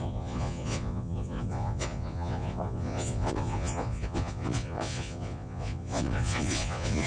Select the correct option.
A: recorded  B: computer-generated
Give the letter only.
B